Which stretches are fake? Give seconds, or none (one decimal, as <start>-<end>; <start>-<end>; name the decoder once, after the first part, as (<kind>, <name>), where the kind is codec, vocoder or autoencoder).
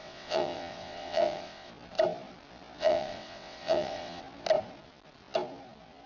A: 0.0-1.7 (vocoder, WaveNeXt); 2.8-4.2